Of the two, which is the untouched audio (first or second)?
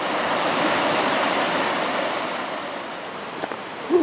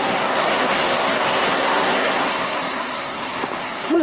first